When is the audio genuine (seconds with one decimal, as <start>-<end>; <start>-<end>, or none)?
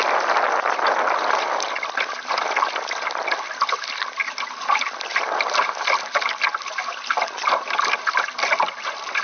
0.0-9.2